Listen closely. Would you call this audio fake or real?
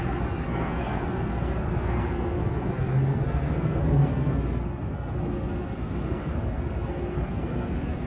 fake